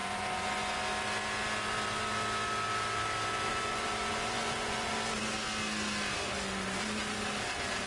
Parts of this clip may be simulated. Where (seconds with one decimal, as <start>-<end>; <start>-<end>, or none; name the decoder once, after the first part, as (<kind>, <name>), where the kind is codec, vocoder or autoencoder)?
0.0-0.8 (vocoder, Vocos); 3.5-4.9